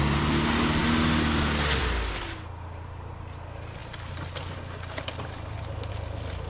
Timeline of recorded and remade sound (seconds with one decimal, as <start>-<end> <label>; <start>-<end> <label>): 0.0-6.5 recorded